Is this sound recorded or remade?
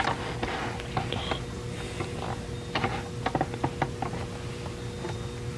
recorded